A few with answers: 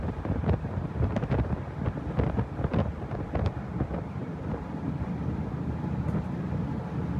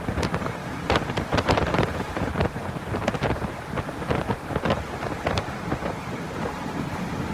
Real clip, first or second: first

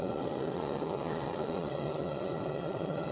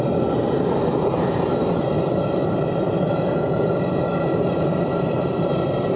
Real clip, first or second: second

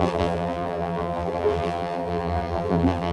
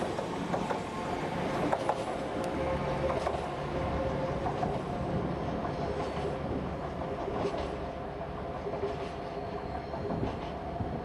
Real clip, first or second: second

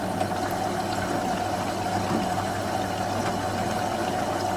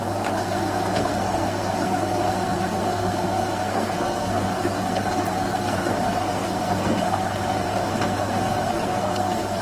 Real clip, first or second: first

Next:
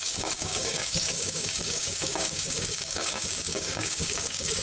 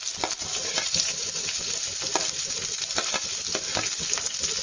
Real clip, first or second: second